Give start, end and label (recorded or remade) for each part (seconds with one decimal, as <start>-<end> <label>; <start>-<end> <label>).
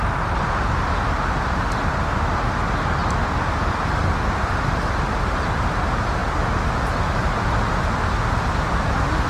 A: 0.0-9.3 recorded